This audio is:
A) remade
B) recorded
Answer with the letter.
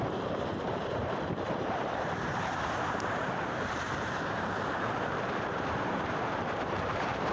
A